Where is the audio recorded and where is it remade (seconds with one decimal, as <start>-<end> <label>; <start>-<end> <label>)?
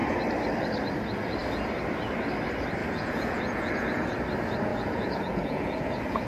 0.0-2.8 recorded; 2.8-4.2 remade; 4.2-4.7 recorded; 4.7-6.3 remade